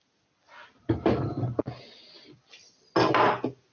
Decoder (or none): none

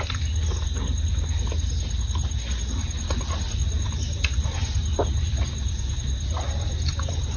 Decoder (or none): none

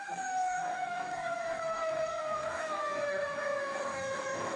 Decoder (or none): codec, DAC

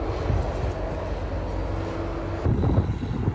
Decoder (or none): none